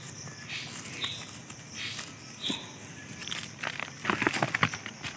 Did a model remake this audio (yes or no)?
no